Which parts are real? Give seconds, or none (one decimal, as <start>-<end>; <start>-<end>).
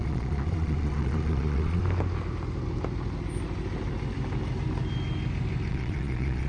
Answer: 1.8-5.7